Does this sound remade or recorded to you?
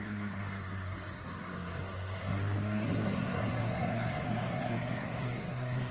remade